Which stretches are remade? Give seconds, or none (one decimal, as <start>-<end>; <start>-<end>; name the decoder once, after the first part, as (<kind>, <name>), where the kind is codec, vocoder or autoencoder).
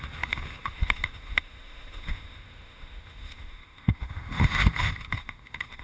0.0-5.8 (autoencoder, DAC-VAE)